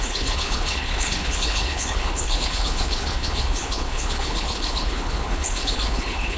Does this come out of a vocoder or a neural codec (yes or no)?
yes